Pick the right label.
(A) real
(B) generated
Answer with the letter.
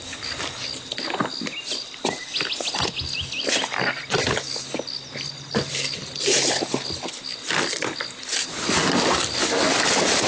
A